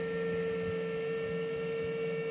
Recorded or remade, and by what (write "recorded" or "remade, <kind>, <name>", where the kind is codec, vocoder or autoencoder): recorded